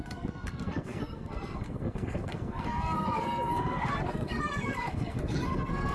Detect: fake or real fake